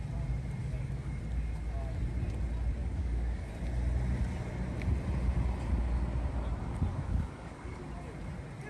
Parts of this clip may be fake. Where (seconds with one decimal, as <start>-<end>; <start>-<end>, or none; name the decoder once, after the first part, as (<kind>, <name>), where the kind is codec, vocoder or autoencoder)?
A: 0.6-1.2 (codec, DAC); 2.8-3.5; 6.9-7.8